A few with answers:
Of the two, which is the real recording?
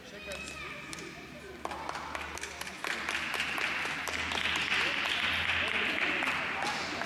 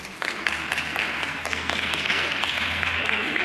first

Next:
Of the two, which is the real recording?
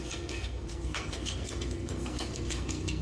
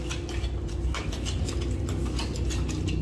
second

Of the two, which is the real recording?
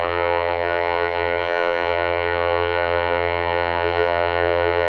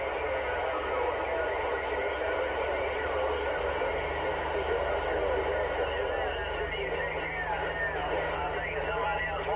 second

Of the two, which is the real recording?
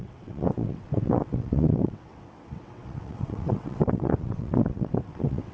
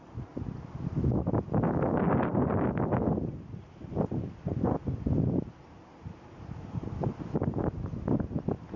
second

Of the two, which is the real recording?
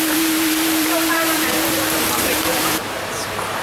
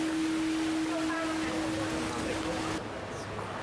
second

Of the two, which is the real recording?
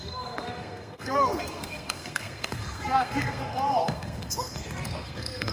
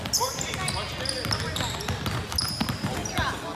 second